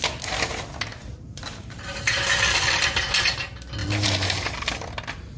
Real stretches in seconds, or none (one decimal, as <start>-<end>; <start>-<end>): 0.0-1.0; 3.4-3.8; 4.7-5.4